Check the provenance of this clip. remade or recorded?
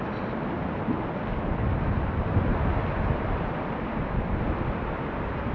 recorded